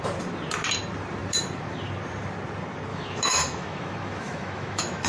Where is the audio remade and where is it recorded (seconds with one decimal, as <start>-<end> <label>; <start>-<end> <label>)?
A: 0.0-2.9 recorded; 2.9-5.1 remade